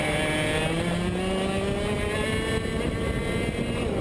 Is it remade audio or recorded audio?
recorded